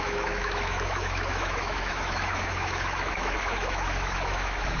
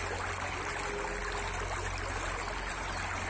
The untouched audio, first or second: second